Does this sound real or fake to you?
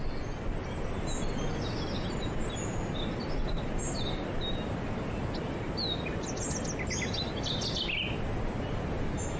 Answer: real